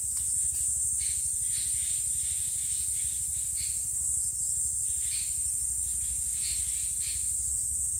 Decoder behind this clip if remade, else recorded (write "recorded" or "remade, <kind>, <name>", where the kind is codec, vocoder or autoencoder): recorded